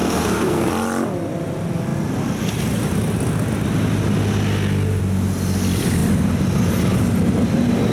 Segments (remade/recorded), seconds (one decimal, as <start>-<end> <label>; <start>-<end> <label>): 0.0-0.7 remade; 0.7-7.9 recorded